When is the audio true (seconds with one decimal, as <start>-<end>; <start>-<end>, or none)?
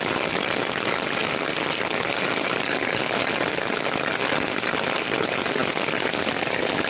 0.0-6.9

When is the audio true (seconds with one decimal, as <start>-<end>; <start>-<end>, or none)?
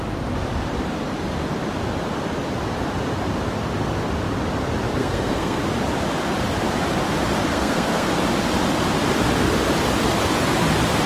0.0-5.0; 5.6-7.5; 8.2-11.1